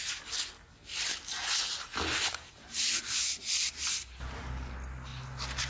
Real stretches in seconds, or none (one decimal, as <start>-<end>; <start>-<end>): 0.0-1.4; 4.4-5.7